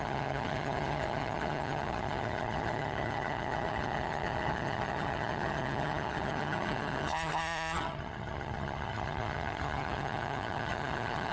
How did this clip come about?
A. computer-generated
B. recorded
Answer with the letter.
A